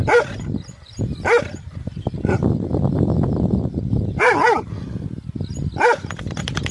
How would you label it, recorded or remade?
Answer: recorded